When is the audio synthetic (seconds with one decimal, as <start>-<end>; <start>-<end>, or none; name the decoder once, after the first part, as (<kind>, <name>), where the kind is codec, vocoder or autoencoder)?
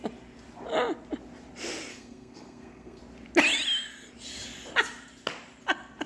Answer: 1.9-3.0 (codec, SNAC)